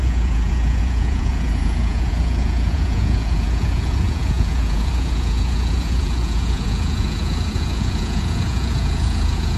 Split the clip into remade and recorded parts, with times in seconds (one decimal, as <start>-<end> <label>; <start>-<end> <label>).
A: 0.0-9.6 remade